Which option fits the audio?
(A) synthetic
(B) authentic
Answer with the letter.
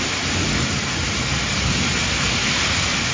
B